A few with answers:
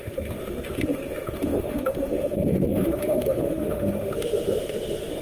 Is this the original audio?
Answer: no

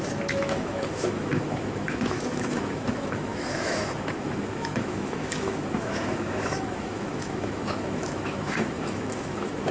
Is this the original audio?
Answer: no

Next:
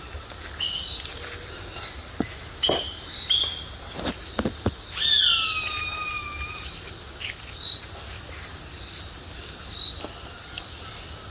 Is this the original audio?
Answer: yes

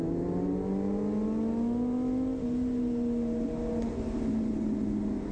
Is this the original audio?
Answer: yes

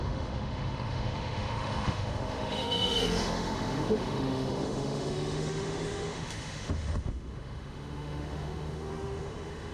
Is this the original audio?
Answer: no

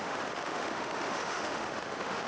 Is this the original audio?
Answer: no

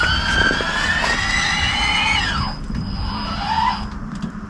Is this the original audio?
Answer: yes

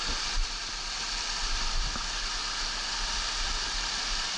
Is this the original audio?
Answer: yes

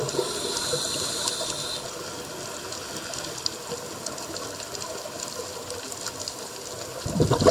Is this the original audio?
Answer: yes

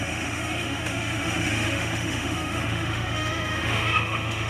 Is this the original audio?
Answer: no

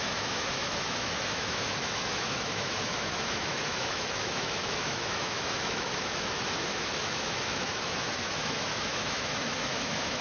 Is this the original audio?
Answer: no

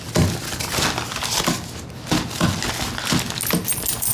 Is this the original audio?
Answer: yes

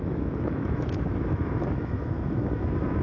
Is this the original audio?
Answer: no